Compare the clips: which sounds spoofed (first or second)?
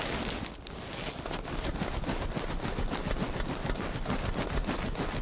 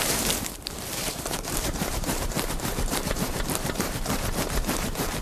second